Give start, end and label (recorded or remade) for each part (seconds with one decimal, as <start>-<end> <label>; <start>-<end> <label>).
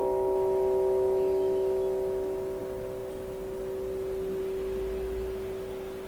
0.0-2.6 remade; 2.6-6.1 recorded